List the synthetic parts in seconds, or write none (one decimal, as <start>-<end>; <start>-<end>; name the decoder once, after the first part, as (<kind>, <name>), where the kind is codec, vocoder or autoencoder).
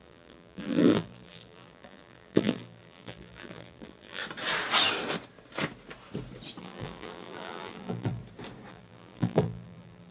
0.0-4.2 (vocoder, BigVGAN v2); 6.6-8.2; 8.7-10.1